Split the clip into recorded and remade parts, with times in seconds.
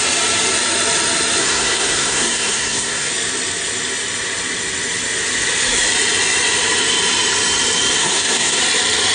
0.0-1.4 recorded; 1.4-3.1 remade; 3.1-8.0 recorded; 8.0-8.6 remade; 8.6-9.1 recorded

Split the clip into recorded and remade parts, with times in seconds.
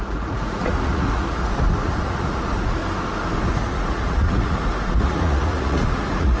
0.0-2.8 remade; 2.8-3.5 recorded; 3.5-6.4 remade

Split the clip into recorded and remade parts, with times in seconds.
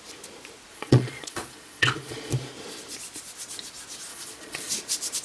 0.0-0.7 recorded; 0.7-2.3 remade; 2.3-4.1 recorded; 4.1-4.7 remade; 4.7-5.2 recorded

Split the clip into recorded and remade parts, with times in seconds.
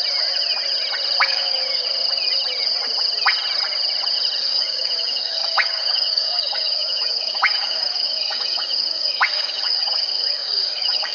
0.0-1.2 recorded; 1.2-1.6 remade; 1.6-4.4 recorded; 4.4-11.1 remade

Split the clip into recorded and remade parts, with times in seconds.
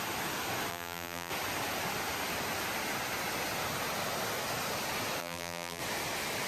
0.0-0.7 recorded; 0.7-1.3 remade; 1.3-5.2 recorded; 5.2-5.8 remade; 5.8-6.5 recorded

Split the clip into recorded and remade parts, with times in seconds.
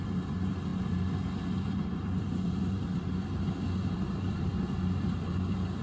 0.0-4.5 remade; 4.5-5.2 recorded; 5.2-5.8 remade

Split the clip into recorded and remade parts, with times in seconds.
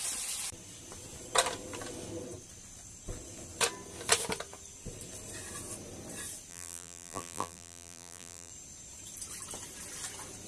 0.0-6.5 recorded; 6.5-8.5 remade; 8.5-10.5 recorded